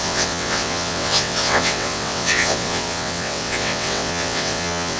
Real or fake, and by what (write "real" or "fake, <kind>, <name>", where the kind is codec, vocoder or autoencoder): fake, vocoder, WaveNeXt